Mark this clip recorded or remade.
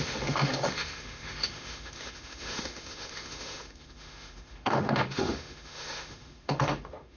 remade